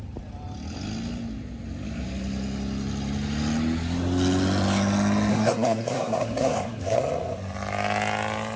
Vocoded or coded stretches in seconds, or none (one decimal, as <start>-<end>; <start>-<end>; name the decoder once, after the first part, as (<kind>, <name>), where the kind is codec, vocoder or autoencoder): 5.3-7.0 (codec, SNAC)